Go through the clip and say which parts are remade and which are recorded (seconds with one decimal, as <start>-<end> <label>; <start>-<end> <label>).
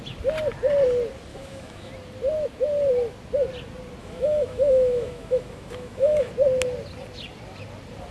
0.0-1.3 recorded; 1.3-1.9 remade; 1.9-4.0 recorded; 4.0-6.3 remade; 6.3-8.1 recorded